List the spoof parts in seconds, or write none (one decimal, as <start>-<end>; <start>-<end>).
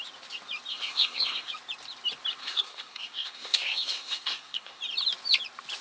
0.7-1.5; 2.4-4.8